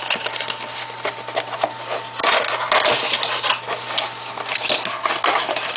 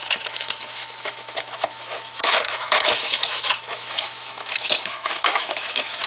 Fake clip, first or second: second